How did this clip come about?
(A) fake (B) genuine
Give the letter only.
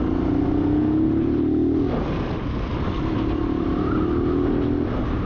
B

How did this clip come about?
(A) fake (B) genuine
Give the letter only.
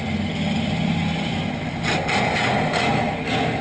B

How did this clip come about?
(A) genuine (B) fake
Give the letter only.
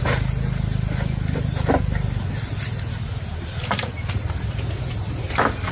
A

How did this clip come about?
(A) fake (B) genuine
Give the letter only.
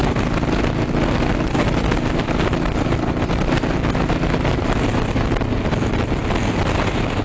B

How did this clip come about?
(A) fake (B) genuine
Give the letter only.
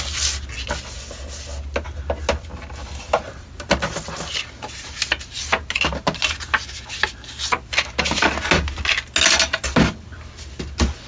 B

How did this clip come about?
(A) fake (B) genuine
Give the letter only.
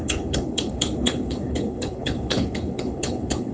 A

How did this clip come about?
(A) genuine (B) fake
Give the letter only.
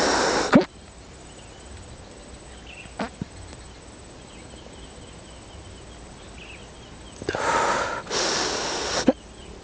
A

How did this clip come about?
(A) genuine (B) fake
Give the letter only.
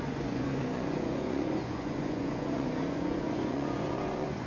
B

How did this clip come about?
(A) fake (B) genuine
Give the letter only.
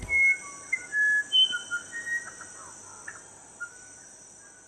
B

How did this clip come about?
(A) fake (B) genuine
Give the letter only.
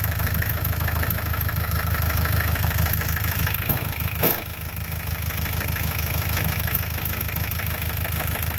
A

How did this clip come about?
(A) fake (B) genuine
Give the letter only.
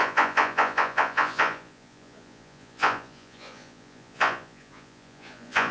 A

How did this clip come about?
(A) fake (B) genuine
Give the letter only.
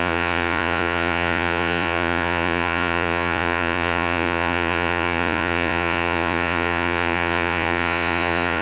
A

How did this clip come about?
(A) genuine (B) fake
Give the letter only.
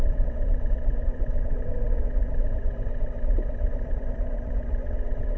B